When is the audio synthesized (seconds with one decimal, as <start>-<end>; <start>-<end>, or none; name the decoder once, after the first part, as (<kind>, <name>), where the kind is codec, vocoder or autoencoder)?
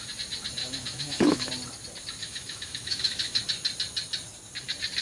0.6-1.5 (autoencoder, DAC-VAE); 2.2-3.4